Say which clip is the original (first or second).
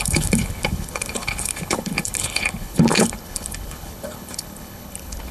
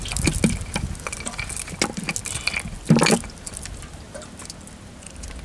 second